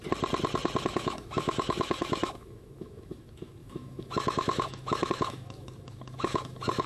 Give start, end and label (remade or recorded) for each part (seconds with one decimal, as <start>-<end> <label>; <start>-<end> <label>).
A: 0.0-0.8 recorded; 0.8-6.9 remade